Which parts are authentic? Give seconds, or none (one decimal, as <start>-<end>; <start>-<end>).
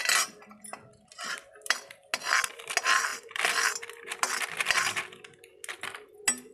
0.0-6.5